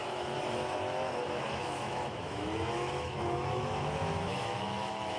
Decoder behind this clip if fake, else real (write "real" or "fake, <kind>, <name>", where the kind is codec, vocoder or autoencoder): fake, autoencoder, DAC-VAE